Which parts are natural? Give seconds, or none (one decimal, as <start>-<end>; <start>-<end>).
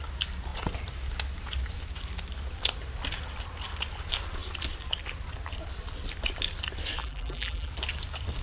0.0-7.0; 7.7-8.4